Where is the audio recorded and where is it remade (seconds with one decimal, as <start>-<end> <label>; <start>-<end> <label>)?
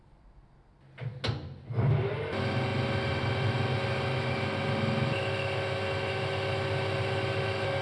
0.0-7.8 recorded